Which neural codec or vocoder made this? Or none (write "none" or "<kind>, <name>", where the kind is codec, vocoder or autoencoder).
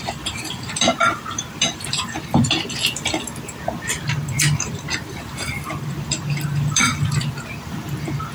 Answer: vocoder, BigVGAN v2